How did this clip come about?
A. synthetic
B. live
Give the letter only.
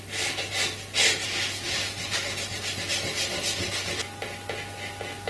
B